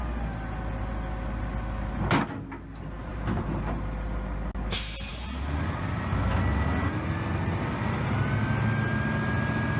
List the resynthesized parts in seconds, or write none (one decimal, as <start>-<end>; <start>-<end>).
3.1-3.8